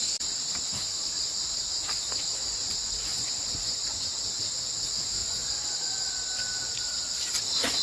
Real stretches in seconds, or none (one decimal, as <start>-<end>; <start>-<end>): 0.0-2.3; 4.1-5.2; 5.8-7.8